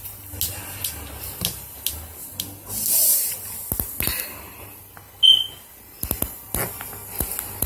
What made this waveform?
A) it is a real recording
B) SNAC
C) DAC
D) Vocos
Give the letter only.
A